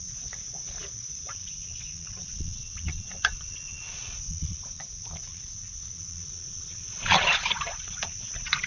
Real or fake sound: fake